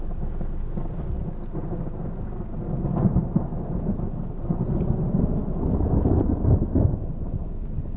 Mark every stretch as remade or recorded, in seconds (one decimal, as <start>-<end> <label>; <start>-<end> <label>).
0.0-8.0 recorded